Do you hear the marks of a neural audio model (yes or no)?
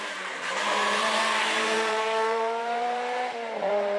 yes